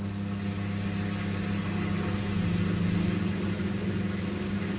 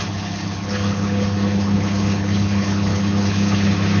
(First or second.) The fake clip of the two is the second